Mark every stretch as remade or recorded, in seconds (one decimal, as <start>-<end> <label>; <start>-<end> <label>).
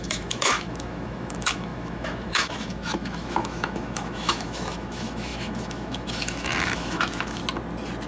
0.0-7.4 remade; 7.4-8.1 recorded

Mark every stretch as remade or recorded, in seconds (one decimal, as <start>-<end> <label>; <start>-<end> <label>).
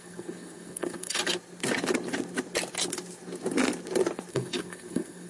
0.0-1.2 remade; 1.2-4.3 recorded; 4.3-5.3 remade